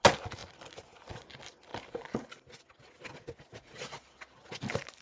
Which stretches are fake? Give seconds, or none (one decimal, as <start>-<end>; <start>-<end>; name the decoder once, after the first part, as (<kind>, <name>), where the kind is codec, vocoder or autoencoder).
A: none